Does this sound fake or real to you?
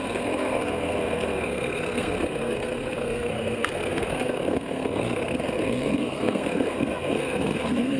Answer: fake